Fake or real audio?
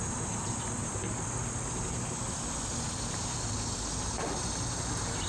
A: real